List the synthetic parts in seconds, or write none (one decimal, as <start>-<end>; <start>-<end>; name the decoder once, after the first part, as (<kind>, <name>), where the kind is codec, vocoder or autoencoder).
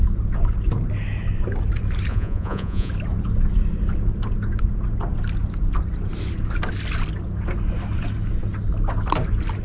2.1-2.9 (vocoder, Vocos)